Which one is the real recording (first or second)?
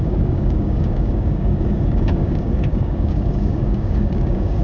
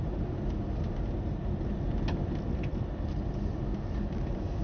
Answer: second